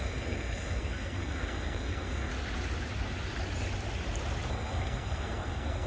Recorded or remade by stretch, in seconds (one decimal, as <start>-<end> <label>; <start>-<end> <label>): 0.0-2.3 remade; 2.3-4.5 recorded; 4.5-5.9 remade